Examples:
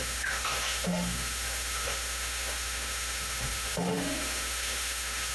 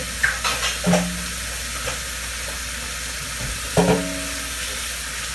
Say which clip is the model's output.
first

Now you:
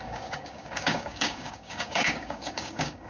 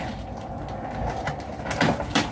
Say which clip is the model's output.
first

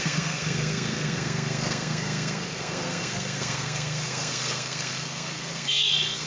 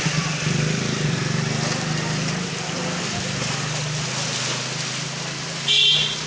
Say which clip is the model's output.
first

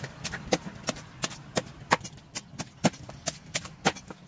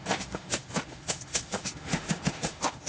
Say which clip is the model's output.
second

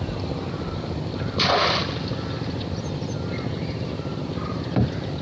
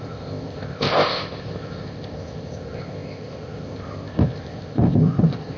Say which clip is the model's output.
second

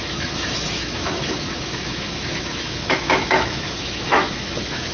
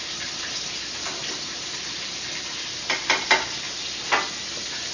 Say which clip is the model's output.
first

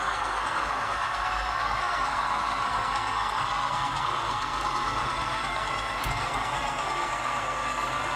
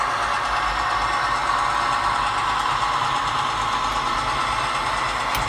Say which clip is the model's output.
first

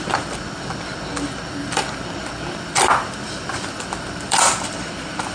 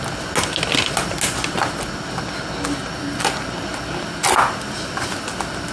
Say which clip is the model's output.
first